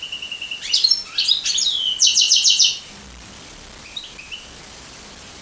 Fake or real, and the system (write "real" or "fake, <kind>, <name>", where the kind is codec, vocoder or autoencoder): fake, vocoder, BigVGAN v2